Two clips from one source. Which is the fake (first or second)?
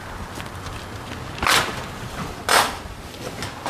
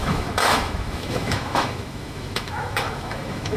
second